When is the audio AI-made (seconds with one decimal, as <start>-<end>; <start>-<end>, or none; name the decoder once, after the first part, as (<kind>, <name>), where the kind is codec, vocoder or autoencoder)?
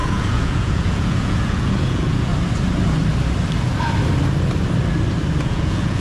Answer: 0.0-2.3 (vocoder, Vocos); 5.4-6.0